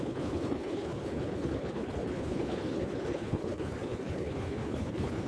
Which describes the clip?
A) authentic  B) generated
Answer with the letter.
B